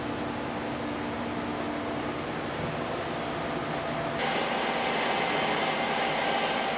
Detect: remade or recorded recorded